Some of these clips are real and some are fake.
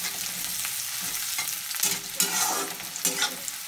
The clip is real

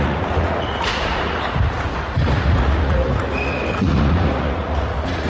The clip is fake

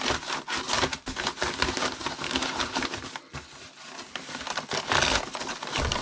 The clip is real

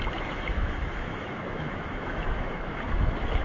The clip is fake